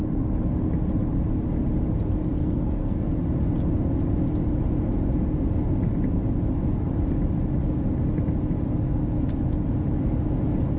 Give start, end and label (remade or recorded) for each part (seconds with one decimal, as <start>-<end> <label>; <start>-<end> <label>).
0.0-2.4 recorded; 2.4-3.1 remade; 3.1-10.8 recorded